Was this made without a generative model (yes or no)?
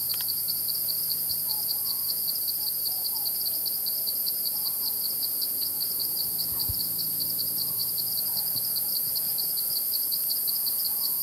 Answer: no